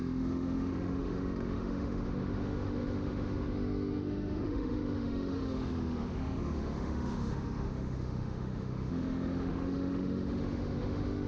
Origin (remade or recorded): remade